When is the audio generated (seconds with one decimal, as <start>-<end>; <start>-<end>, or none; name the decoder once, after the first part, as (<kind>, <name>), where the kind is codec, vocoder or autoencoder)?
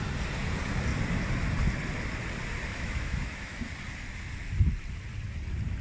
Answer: 2.7-3.7 (autoencoder, DAC-VAE)